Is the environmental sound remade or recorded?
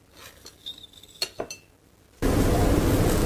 recorded